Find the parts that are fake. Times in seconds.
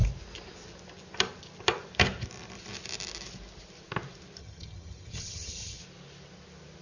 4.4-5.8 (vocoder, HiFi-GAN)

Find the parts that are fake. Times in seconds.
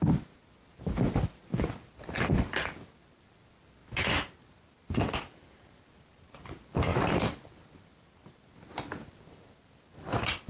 none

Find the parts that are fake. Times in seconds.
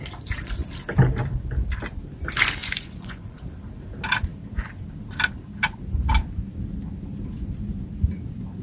2.6-3.4 (vocoder, Vocos)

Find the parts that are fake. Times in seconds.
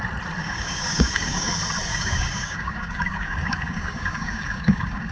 0.4-1.5 (codec, DAC); 1.9-5.1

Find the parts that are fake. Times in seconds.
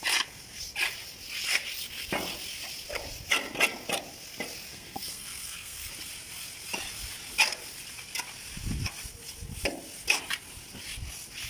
4.7-5.9 (codec, SNAC)